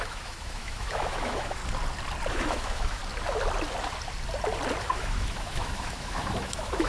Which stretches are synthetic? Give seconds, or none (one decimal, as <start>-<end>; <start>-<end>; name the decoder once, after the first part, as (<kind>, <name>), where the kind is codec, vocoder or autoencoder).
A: 0.0-1.6 (autoencoder, DAC-VAE); 2.3-3.0; 4.8-6.9